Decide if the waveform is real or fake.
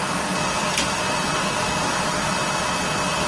real